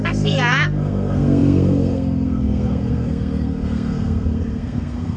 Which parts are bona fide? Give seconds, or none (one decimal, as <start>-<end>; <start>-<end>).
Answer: none